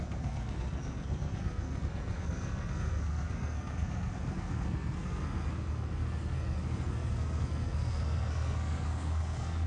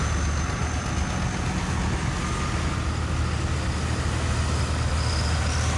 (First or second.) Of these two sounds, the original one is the second